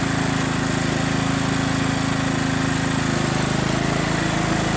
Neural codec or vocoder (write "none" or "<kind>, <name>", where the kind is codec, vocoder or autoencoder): none